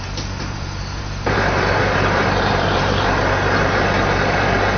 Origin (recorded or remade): remade